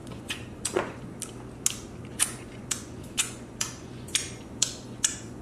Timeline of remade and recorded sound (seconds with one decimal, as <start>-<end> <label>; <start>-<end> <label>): 0.0-1.2 remade; 1.2-2.1 recorded; 2.1-5.4 remade